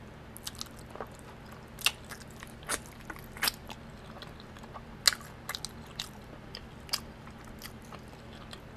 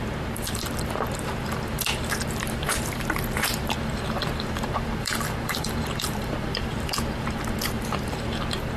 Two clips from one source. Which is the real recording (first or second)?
first